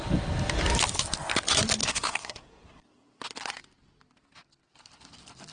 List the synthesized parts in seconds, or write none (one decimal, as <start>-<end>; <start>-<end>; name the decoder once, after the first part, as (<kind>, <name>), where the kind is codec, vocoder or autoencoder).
1.8-3.2 (codec, SNAC)